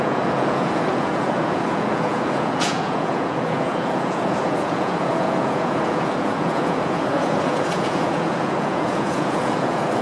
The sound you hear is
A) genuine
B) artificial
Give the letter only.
B